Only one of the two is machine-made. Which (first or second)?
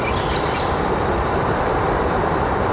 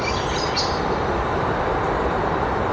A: first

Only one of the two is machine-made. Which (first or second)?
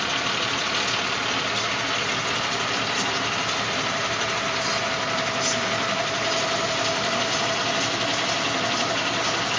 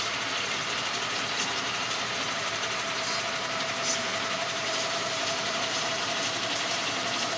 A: second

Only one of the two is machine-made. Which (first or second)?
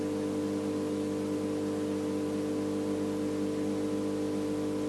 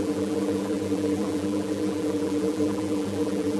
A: second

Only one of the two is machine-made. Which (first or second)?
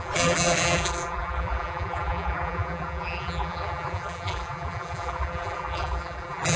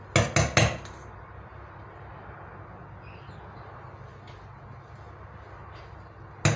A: first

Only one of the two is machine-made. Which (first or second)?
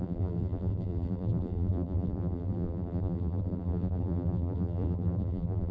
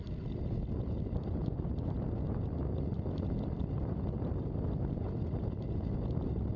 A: first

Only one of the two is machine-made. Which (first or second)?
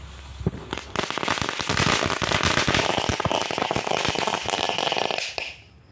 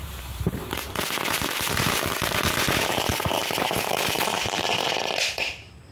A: second